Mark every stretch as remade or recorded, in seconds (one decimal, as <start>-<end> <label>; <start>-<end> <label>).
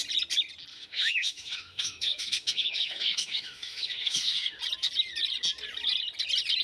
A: 0.0-0.7 recorded; 0.7-4.6 remade; 4.6-6.6 recorded